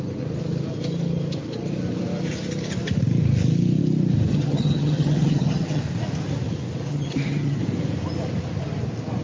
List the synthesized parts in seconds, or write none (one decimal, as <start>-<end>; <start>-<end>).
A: 4.3-5.8; 6.9-7.6